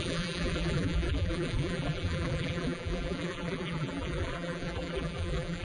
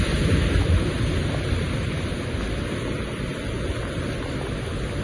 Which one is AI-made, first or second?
first